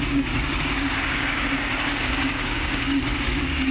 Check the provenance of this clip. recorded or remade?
remade